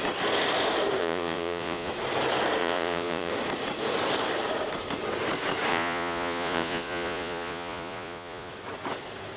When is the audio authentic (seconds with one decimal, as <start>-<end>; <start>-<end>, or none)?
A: 0.0-1.0; 1.9-2.6; 3.3-5.7; 8.5-9.4